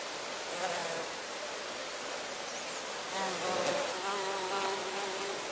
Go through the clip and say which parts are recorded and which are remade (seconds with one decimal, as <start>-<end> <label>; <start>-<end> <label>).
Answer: 0.0-0.8 recorded; 0.8-1.3 remade; 1.3-5.5 recorded